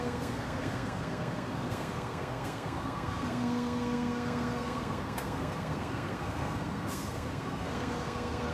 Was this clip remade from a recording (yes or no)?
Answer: yes